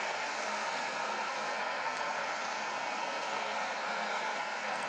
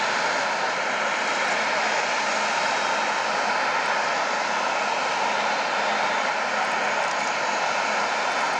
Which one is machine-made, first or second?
first